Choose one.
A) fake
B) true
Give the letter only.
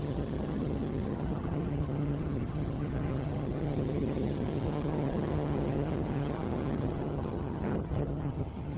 A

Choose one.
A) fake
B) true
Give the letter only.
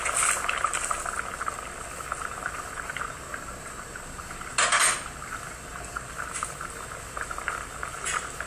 B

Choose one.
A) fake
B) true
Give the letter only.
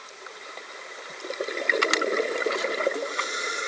A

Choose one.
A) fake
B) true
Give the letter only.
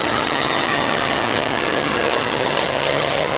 A